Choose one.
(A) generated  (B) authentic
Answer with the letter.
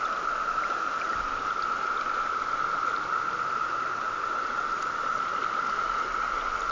B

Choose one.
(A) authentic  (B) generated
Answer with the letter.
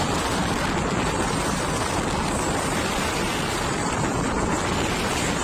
A